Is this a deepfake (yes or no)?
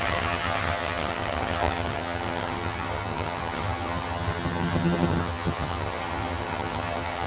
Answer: yes